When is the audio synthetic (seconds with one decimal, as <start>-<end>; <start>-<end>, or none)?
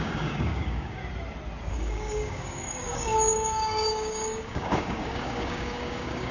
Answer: 0.0-1.0; 1.7-6.3